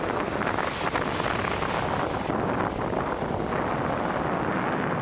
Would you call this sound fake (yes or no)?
no